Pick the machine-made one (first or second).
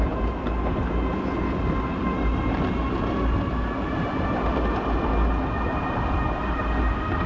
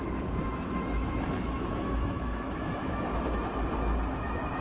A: second